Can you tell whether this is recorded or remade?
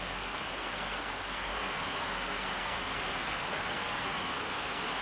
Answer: remade